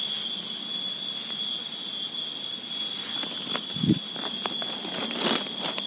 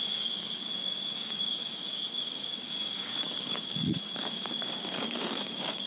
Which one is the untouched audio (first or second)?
first